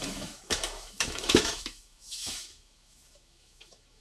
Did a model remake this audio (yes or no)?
yes